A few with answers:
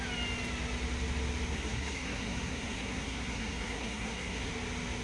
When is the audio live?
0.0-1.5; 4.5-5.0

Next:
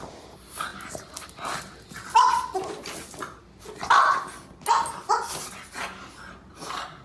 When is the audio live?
0.0-7.0

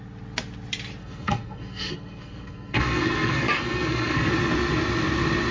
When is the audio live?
0.0-1.0; 4.3-5.5

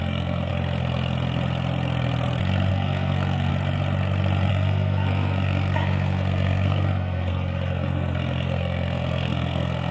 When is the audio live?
0.5-2.7; 3.5-4.5